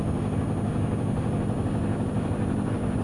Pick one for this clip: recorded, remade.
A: recorded